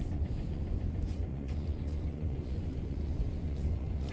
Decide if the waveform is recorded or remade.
remade